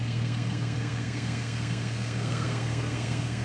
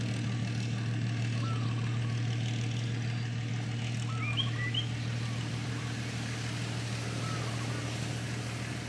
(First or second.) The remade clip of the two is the first